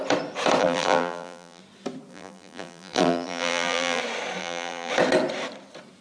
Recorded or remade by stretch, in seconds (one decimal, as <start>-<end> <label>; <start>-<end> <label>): 0.0-0.6 recorded; 0.6-1.6 remade; 1.6-2.1 recorded; 2.1-4.0 remade; 4.0-4.4 recorded; 4.4-4.9 remade; 4.9-6.0 recorded